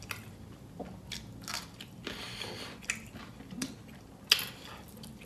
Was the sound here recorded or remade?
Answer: recorded